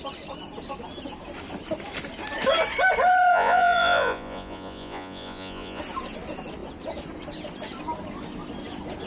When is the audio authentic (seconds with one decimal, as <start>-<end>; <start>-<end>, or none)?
0.0-3.3; 5.8-9.1